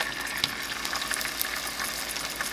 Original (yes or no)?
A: yes